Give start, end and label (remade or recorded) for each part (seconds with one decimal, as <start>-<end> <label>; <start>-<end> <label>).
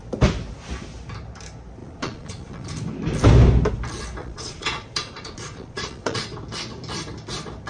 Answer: 0.0-1.8 recorded; 1.8-2.7 remade; 2.7-4.2 recorded; 4.2-6.2 remade; 6.2-7.7 recorded